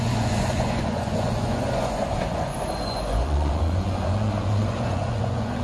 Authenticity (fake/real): fake